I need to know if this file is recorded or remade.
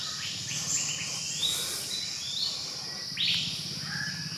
recorded